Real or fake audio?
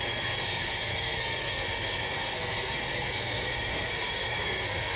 fake